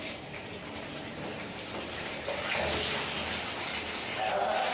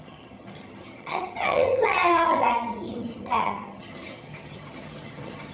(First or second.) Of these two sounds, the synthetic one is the second